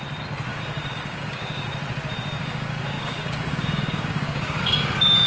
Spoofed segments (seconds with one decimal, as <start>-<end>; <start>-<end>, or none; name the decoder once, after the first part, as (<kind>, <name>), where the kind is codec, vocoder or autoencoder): 0.5-1.7 (codec, DAC); 2.4-5.3